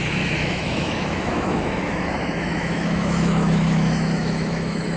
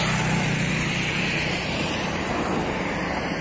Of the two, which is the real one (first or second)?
second